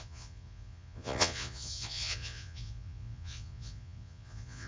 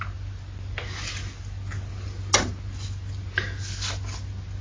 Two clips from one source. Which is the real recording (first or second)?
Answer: second